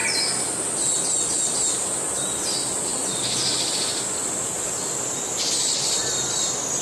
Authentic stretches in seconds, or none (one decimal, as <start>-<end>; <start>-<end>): 0.0-6.8

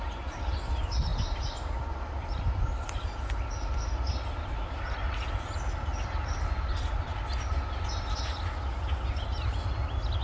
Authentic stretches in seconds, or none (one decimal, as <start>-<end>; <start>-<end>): 0.0-10.2

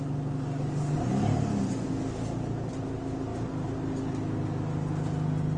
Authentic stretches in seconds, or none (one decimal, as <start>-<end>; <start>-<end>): 0.0-5.6

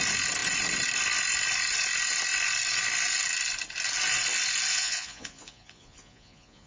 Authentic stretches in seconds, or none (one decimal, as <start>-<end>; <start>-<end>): 0.0-4.7

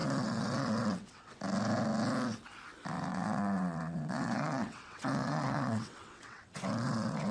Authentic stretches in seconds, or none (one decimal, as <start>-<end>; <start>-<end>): 1.4-3.1